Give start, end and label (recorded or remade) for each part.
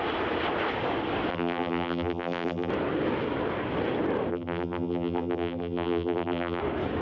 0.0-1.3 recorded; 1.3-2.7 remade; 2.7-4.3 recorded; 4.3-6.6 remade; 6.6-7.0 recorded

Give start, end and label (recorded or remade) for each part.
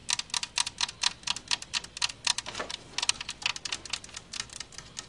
0.0-5.1 recorded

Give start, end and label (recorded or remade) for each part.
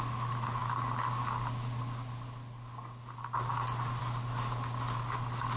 0.0-5.6 recorded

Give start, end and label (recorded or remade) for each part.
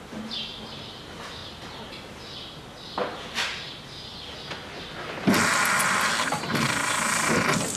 0.0-7.8 recorded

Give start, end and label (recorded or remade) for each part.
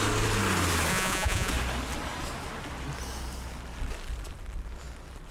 0.0-0.9 recorded; 0.9-1.5 remade; 1.5-5.3 recorded